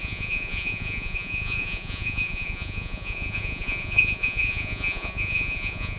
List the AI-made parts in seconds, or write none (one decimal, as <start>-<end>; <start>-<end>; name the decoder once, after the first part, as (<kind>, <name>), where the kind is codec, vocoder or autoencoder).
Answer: 0.0-6.0 (vocoder, Vocos)